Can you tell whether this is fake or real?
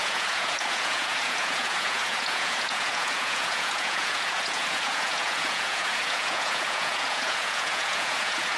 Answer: fake